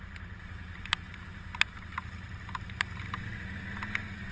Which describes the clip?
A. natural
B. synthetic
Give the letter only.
A